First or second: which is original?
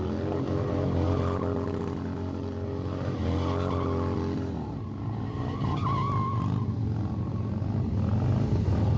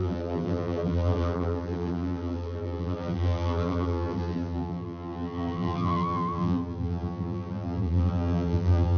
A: first